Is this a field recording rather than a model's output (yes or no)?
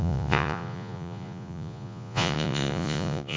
no